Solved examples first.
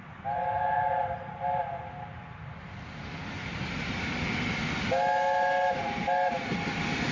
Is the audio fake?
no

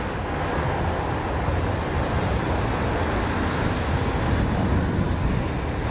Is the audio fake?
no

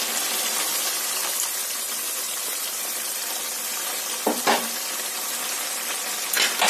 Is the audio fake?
yes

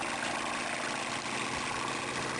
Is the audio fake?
no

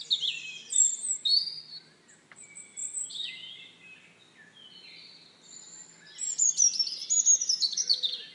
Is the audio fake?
no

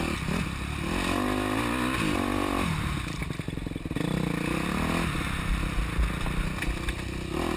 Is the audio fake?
no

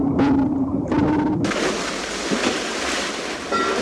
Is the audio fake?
yes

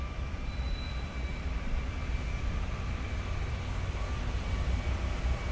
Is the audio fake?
no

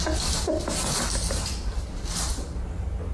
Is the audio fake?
no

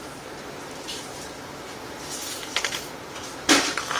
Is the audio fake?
yes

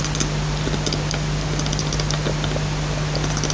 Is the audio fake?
no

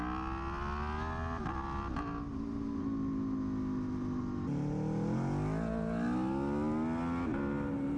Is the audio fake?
no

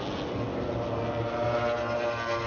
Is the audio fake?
no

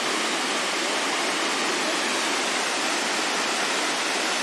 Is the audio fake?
no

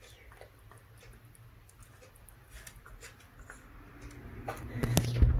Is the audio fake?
no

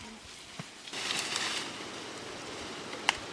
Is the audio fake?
no